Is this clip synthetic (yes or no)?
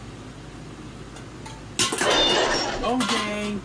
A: no